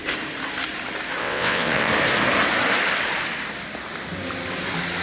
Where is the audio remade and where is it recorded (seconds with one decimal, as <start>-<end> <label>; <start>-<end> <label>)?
0.0-1.2 recorded; 1.2-1.9 remade; 1.9-5.0 recorded